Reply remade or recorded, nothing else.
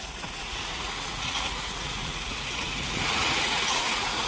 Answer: remade